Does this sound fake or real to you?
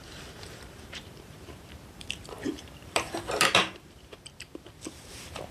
fake